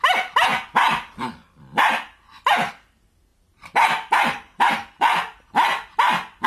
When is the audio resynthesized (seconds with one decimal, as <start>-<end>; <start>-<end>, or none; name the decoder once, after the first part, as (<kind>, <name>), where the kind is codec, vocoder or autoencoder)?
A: 0.5-2.7 (vocoder, BigVGAN v2); 3.3-4.7